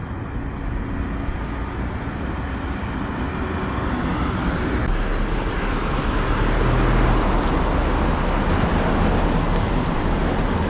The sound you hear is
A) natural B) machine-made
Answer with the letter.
A